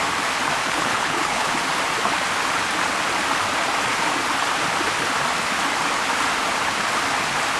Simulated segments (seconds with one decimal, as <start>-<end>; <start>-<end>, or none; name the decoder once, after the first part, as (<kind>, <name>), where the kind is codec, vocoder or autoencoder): 0.6-1.5 (codec, HILCodec)